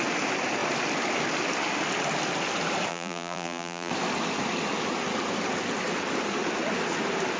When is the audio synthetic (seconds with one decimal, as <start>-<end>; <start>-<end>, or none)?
2.9-3.9